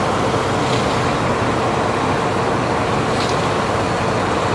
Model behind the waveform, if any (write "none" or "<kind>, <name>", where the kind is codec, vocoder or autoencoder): none